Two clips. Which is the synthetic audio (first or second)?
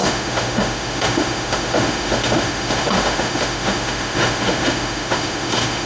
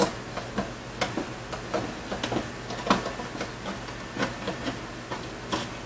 first